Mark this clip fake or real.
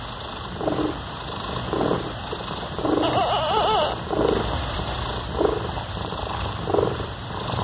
real